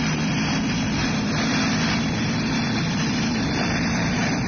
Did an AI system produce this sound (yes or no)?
yes